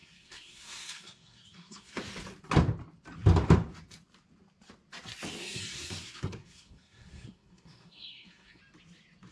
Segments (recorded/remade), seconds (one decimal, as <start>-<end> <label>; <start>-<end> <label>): 0.0-2.0 remade; 2.0-5.4 recorded; 5.4-8.6 remade; 8.6-9.3 recorded